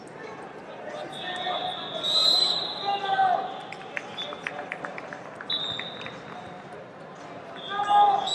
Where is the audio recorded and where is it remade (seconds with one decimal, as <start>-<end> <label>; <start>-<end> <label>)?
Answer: 0.0-8.3 recorded